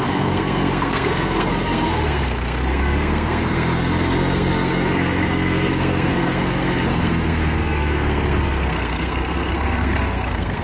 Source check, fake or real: fake